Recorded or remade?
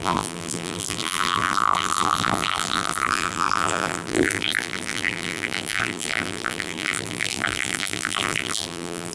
remade